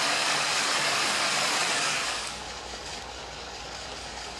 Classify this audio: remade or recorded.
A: remade